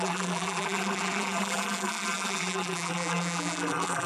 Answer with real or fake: fake